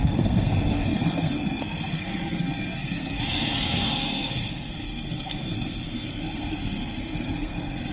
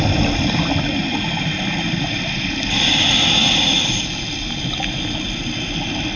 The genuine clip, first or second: second